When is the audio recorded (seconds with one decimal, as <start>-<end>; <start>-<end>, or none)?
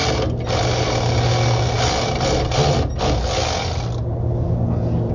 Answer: 0.0-5.1